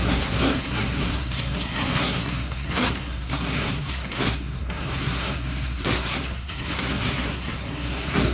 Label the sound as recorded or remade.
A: remade